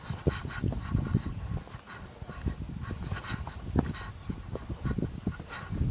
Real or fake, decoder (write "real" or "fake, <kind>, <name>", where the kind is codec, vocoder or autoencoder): real